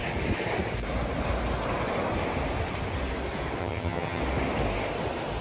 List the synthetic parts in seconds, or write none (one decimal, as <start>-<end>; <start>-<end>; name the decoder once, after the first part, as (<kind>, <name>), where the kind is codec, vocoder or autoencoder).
3.6-4.2 (vocoder, HiFi-GAN)